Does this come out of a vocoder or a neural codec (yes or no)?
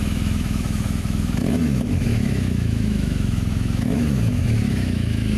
yes